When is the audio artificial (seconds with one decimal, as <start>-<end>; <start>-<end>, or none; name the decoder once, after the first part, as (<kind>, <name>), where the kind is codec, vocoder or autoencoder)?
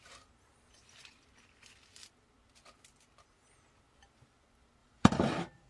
4.8-5.7 (vocoder, BigVGAN v2)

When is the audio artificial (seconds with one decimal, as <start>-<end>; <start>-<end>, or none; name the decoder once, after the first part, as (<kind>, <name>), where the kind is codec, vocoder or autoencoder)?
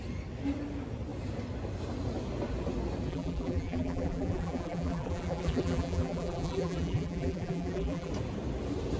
3.1-8.1 (vocoder, BigVGAN v2)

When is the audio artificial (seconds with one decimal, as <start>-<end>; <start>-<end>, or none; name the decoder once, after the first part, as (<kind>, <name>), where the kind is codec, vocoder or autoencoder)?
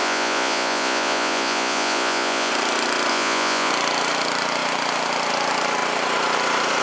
0.0-2.5 (vocoder, Vocos); 3.1-3.7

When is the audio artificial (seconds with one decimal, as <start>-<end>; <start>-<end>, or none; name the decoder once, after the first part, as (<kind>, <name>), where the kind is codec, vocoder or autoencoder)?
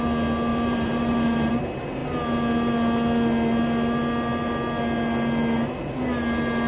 0.5-1.5 (vocoder, BigVGAN v2)